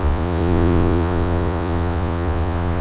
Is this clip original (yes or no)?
no